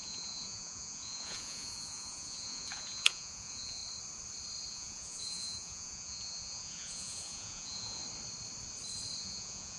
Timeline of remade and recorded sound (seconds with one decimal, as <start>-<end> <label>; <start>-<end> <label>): 0.0-3.8 remade; 3.8-4.7 recorded; 4.7-8.0 remade; 8.0-9.2 recorded; 9.2-9.8 remade